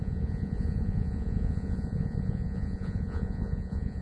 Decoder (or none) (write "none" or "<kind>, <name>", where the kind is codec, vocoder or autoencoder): vocoder, Vocos